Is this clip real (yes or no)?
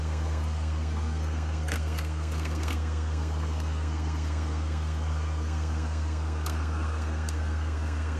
no